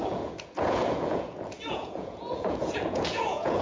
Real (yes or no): no